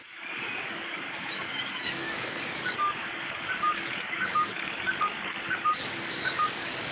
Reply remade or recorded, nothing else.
remade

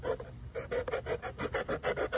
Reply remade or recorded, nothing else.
recorded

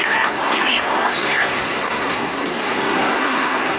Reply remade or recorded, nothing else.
remade